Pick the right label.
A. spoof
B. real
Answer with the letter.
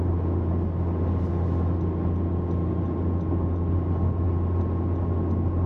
B